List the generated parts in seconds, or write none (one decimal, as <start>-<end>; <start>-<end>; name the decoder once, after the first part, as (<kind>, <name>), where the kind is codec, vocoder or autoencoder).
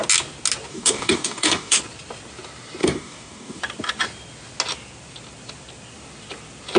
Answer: 0.7-1.8 (codec, DAC); 2.8-3.6